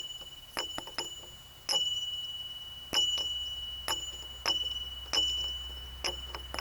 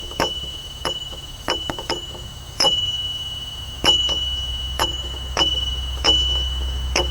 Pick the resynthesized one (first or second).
second